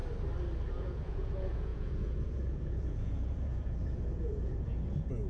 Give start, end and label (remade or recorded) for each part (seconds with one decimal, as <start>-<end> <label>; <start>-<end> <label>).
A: 0.0-0.7 recorded; 0.7-5.3 remade